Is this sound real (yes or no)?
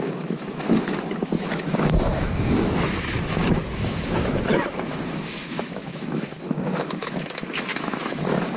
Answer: no